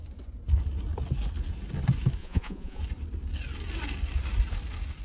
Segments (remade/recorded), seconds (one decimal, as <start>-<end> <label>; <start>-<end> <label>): 0.0-2.2 recorded; 2.2-2.8 remade; 2.8-5.0 recorded